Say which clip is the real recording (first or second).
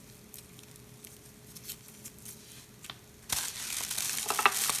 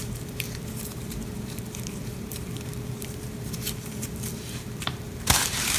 first